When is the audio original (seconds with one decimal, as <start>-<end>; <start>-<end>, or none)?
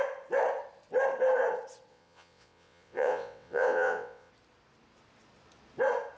0.0-1.9; 4.3-6.2